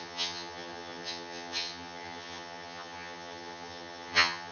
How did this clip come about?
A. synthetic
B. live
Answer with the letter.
A